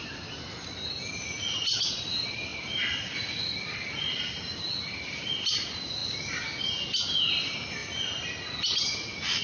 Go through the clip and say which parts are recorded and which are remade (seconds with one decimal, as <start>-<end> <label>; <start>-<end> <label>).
0.0-2.5 recorded; 2.5-5.2 remade; 5.2-9.4 recorded